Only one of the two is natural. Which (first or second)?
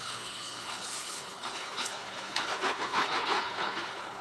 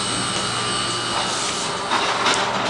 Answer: second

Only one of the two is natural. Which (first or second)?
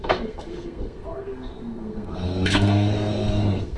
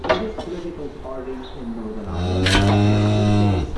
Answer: second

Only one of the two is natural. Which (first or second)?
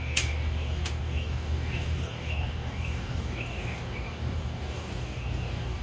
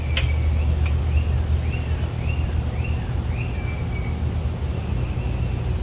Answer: second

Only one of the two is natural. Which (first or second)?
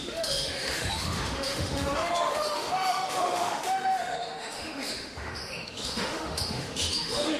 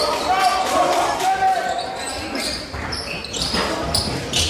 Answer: second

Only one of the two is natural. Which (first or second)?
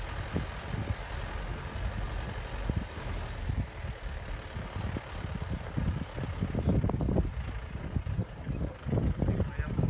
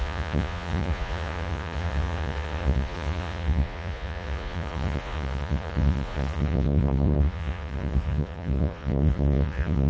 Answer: first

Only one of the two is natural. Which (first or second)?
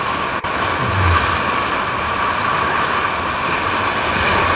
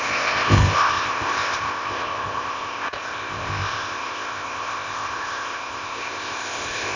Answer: first